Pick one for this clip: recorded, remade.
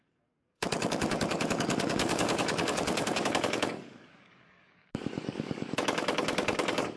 remade